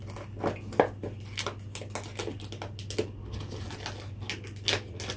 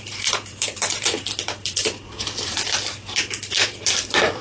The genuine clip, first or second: first